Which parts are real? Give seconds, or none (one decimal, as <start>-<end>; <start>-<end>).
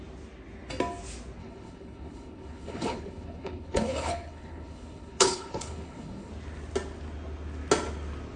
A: 0.0-1.4; 6.3-8.4